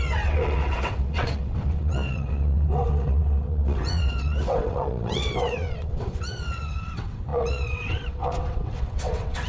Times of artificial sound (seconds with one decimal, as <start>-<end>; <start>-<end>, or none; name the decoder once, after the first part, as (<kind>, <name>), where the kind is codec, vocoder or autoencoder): 0.0-9.5 (vocoder, WaveNeXt)